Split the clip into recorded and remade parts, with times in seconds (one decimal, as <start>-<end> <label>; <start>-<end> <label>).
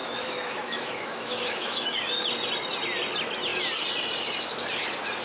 0.0-1.9 remade; 1.9-5.2 recorded